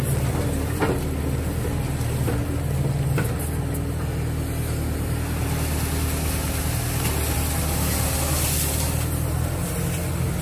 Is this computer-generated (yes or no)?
no